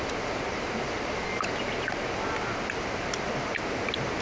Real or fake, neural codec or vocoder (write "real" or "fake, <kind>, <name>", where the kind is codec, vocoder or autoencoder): real